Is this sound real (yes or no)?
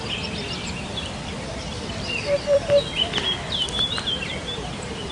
no